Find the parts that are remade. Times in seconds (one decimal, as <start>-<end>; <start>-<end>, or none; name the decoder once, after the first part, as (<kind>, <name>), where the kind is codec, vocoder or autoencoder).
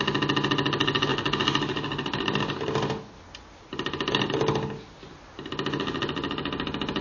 none